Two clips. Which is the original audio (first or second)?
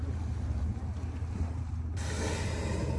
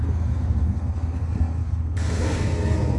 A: first